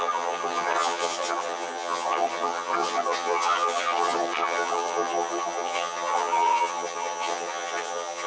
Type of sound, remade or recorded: remade